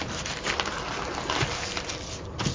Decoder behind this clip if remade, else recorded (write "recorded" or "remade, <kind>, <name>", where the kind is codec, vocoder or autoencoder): recorded